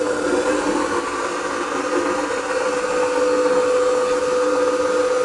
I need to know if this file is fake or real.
real